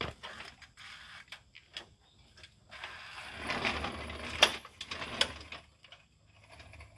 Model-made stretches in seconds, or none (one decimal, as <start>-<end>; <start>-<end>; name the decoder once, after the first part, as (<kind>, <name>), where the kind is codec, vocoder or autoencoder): none